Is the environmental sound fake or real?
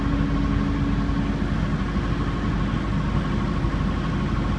real